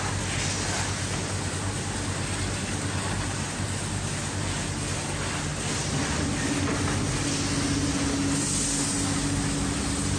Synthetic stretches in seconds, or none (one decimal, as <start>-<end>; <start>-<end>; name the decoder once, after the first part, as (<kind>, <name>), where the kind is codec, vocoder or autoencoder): none